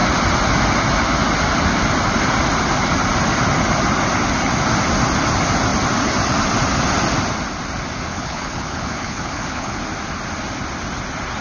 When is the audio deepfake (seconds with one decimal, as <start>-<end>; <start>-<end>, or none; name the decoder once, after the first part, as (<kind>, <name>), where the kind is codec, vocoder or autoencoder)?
8.1-9.8 (codec, HILCodec)